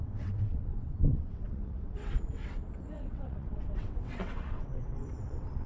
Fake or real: fake